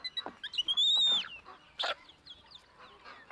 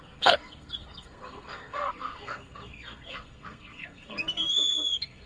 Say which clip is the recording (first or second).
first